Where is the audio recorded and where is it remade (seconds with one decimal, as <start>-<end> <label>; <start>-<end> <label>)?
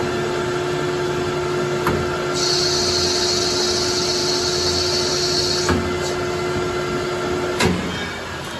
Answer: 0.0-8.6 recorded